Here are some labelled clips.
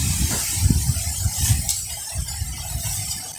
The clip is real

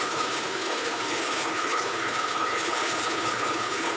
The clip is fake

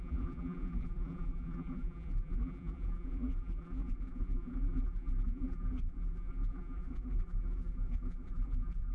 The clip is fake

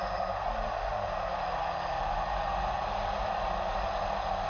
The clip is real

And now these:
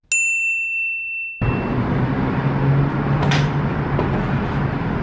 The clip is real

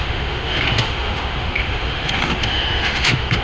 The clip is fake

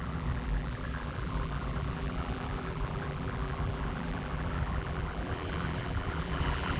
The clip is fake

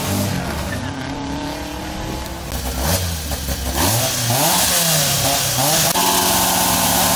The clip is real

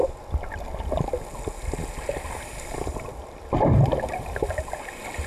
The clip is real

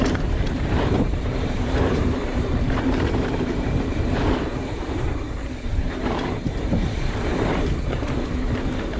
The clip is fake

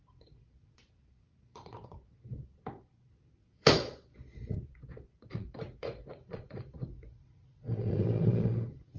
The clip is fake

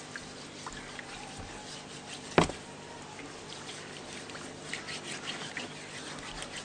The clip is real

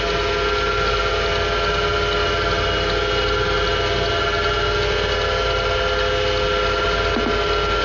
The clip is real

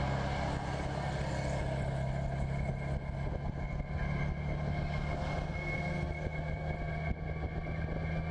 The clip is real